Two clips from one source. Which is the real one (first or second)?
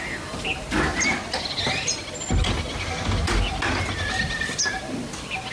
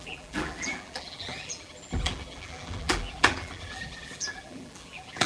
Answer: first